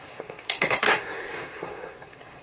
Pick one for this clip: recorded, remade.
remade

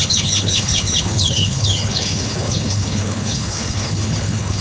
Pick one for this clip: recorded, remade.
remade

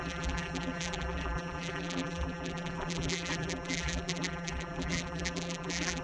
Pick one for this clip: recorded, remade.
remade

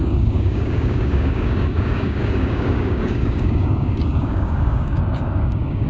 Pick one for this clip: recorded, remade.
remade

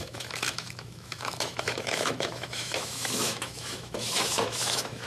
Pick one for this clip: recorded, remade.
remade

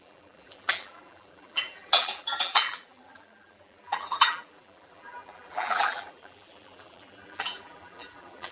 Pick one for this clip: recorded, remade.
remade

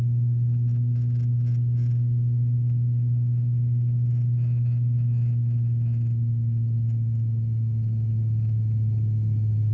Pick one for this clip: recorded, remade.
recorded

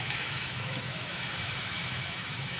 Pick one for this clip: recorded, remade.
remade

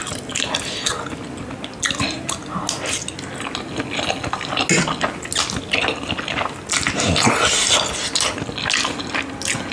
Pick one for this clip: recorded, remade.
recorded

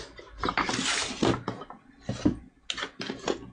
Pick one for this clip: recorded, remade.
recorded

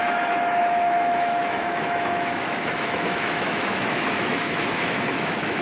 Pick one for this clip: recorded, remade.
remade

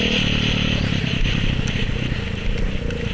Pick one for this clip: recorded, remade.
recorded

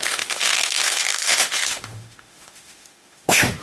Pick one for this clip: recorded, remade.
remade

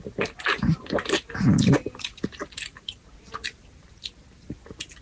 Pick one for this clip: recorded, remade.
recorded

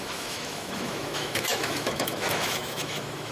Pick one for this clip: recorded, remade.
remade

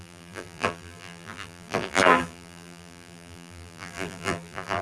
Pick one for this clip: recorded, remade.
remade